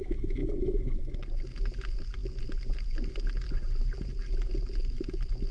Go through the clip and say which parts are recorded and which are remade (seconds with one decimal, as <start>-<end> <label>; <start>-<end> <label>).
0.0-5.5 recorded